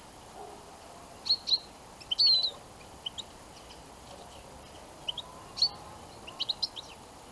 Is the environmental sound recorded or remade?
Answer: recorded